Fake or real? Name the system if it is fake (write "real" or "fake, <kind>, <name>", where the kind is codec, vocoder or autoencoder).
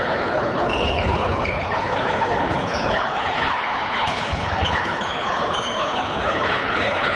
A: fake, codec, HILCodec